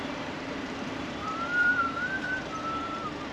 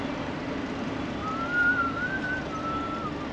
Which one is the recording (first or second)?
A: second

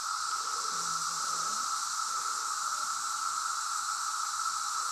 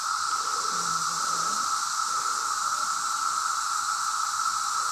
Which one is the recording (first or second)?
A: first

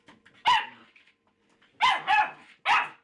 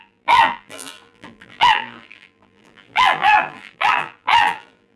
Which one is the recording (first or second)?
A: first